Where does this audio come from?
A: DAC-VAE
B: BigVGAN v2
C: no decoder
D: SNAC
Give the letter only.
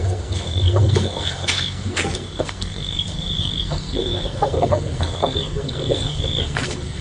D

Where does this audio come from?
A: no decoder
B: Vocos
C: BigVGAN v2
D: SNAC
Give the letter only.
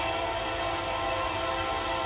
A